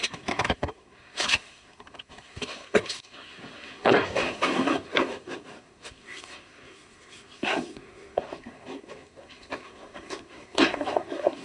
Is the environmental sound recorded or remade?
remade